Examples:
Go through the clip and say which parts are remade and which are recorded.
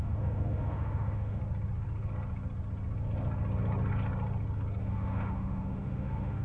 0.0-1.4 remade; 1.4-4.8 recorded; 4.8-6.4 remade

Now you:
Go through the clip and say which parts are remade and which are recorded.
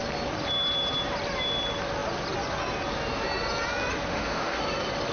0.0-4.1 recorded; 4.1-4.6 remade; 4.6-5.1 recorded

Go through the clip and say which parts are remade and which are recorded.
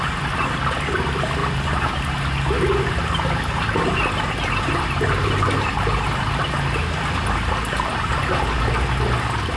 0.0-9.6 recorded